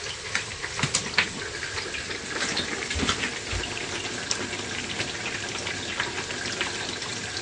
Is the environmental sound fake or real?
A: real